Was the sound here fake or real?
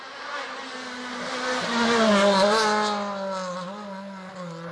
real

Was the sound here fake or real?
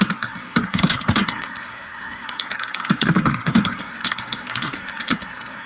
fake